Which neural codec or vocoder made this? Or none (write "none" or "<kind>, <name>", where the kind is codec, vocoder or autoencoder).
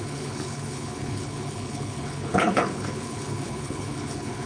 codec, HILCodec